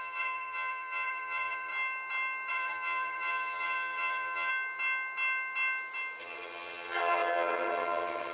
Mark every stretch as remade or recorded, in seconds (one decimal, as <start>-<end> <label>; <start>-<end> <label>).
0.0-1.7 remade; 1.7-2.5 recorded; 2.5-4.5 remade; 4.5-6.2 recorded; 6.2-8.3 remade